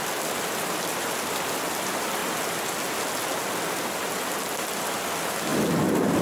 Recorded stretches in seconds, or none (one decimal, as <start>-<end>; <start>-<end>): 0.0-5.5